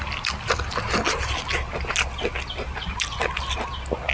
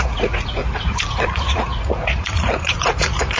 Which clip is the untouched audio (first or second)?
first